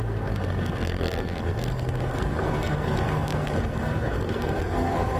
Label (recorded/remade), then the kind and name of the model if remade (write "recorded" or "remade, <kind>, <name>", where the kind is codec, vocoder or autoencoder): remade, codec, SNAC